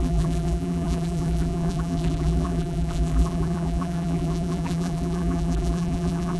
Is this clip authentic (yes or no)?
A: no